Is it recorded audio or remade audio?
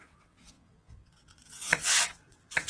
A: remade